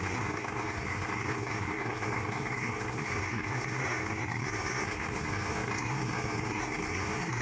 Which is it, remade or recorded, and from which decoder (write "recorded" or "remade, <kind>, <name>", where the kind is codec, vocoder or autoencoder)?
remade, codec, SNAC